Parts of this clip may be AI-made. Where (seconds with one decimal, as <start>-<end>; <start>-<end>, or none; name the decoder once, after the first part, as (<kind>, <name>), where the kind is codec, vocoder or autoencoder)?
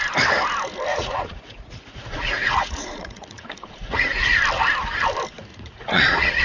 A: 0.9-4.4 (vocoder, Vocos); 5.5-6.4